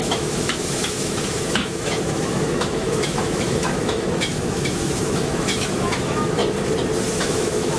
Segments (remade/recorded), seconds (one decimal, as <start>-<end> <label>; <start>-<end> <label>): 0.0-6.4 remade; 6.4-7.2 recorded; 7.2-7.8 remade

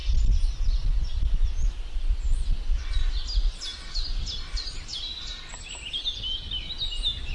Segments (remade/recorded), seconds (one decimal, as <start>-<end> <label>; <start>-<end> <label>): 0.0-7.3 recorded